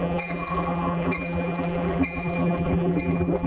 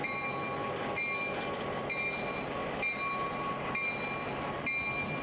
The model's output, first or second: first